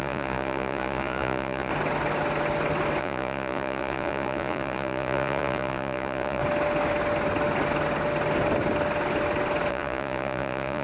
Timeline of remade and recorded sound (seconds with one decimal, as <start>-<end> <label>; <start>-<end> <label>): 0.0-1.7 remade; 1.7-3.0 recorded; 3.0-6.4 remade; 6.4-9.7 recorded; 9.7-10.8 remade

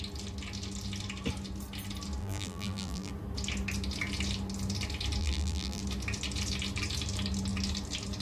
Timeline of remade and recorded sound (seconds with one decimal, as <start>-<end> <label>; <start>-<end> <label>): 0.0-2.2 recorded; 2.2-3.1 remade; 3.1-5.2 recorded; 5.2-5.8 remade; 5.8-8.2 recorded

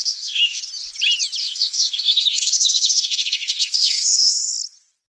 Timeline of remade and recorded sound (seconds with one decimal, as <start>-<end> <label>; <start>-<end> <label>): 0.0-0.6 remade; 0.6-1.4 recorded; 1.4-4.5 remade; 4.5-5.1 recorded

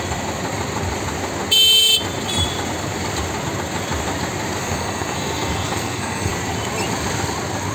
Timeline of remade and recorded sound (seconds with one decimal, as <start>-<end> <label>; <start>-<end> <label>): 0.0-4.6 recorded; 4.6-6.3 remade; 6.3-7.7 recorded